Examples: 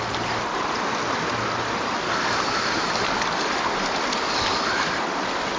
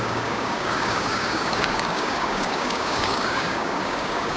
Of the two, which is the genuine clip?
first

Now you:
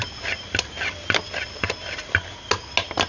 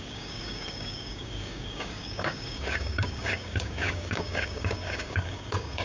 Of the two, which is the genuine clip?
first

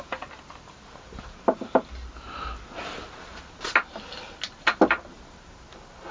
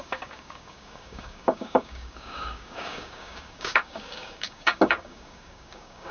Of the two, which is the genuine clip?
first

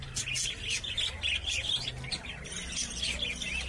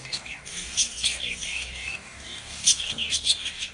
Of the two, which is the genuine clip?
first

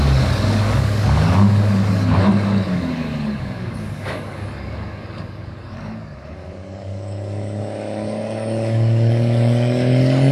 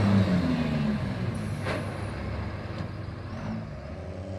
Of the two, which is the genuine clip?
second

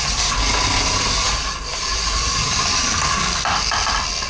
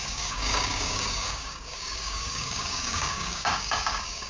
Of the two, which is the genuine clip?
first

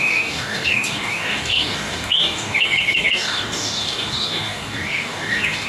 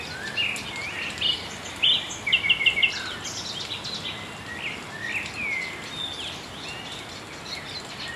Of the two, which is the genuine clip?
second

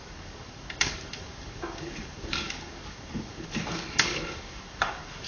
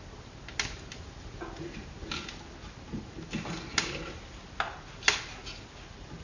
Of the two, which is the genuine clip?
second